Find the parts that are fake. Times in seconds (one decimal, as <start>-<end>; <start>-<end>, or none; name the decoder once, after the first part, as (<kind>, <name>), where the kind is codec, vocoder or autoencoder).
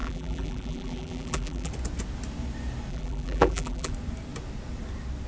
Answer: 0.0-1.7 (vocoder, BigVGAN v2); 2.9-3.9